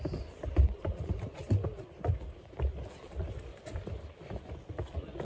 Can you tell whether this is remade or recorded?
recorded